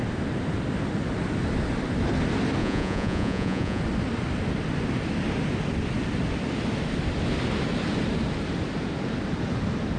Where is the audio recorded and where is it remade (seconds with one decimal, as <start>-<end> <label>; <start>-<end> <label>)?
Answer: 0.0-2.6 recorded; 2.6-3.8 remade; 3.8-10.0 recorded